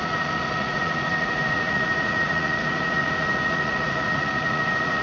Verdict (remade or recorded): remade